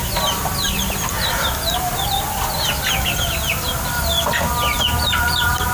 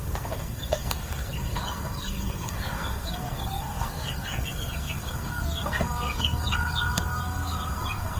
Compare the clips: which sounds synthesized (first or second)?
second